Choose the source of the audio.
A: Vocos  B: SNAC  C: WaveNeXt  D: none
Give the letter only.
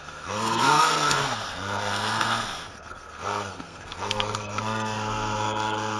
B